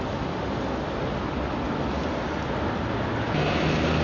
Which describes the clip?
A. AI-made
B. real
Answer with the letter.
B